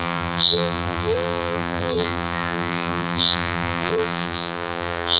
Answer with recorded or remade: remade